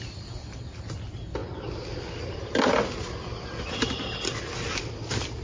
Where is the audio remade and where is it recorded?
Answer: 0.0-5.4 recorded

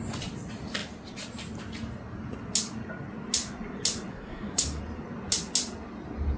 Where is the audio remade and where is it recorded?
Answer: 0.0-4.1 recorded; 4.1-4.8 remade; 4.8-6.4 recorded

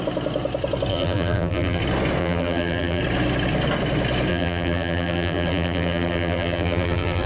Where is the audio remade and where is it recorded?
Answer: 0.0-0.9 recorded; 0.9-1.8 remade; 1.8-2.2 recorded; 2.2-3.0 remade; 3.0-4.3 recorded; 4.3-7.3 remade

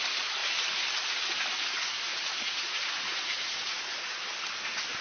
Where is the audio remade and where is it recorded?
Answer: 0.0-2.1 recorded; 2.1-3.9 remade; 3.9-5.0 recorded

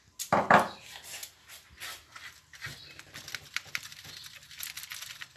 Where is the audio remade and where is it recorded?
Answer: 0.0-5.4 recorded